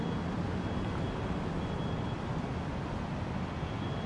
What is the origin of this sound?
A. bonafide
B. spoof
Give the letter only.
A